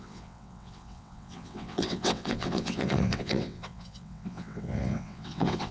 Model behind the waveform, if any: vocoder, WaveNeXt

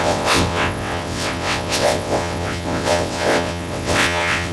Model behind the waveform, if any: vocoder, WaveNeXt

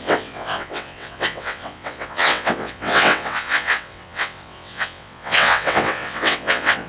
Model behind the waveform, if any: vocoder, WaveNeXt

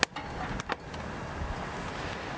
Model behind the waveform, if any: none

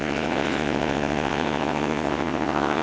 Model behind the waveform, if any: vocoder, WaveNeXt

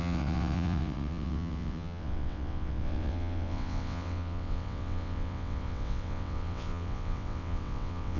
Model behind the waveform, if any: vocoder, WaveNeXt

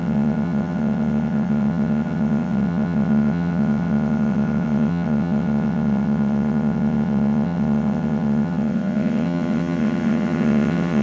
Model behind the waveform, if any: vocoder, WaveNeXt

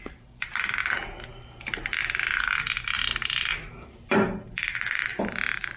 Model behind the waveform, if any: none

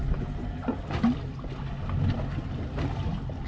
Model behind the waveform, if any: none